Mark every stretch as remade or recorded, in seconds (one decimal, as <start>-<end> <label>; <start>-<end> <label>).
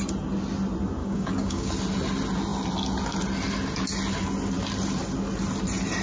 0.0-1.0 recorded; 1.0-1.7 remade; 1.7-6.0 recorded